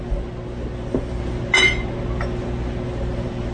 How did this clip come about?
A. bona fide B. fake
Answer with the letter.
A